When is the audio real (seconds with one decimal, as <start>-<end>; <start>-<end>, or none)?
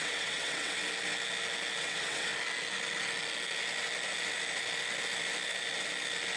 0.8-1.8; 2.3-6.4